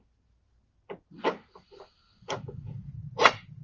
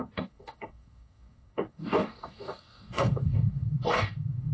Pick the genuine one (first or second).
first